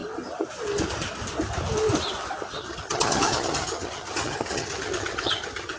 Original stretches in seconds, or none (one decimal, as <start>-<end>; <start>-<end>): 0.0-2.6